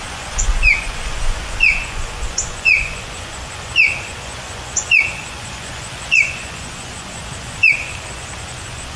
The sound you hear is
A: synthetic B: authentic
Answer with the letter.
A